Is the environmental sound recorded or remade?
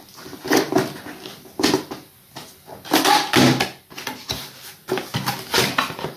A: recorded